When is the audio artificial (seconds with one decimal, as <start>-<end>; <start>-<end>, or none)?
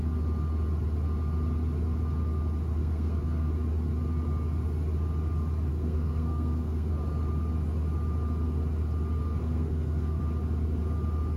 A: 2.8-3.5; 5.7-6.9; 9.4-10.2